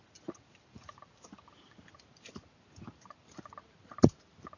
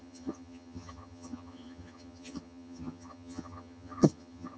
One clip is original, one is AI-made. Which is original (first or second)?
first